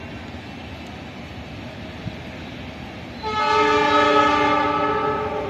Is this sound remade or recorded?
recorded